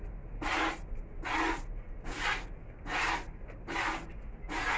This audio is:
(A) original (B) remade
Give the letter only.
A